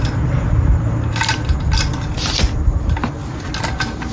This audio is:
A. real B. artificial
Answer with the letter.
A